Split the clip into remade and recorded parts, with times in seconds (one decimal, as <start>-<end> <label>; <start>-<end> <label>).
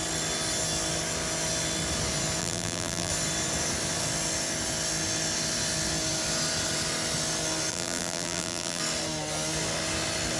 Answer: 0.0-2.4 recorded; 2.4-3.1 remade; 3.1-7.7 recorded; 7.7-8.8 remade; 8.8-10.4 recorded